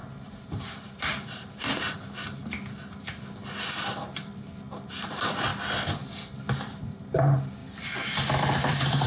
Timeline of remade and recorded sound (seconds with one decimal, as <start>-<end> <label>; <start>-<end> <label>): 0.0-2.4 remade; 2.4-4.9 recorded; 4.9-5.5 remade; 5.5-6.7 recorded; 6.7-7.6 remade; 7.6-8.4 recorded; 8.4-9.1 remade